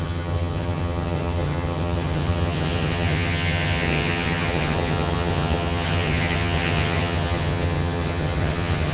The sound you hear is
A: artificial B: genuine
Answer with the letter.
A